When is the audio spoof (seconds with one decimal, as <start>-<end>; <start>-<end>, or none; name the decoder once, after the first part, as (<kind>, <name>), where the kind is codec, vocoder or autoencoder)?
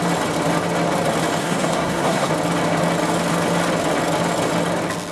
1.4-2.3 (codec, SNAC)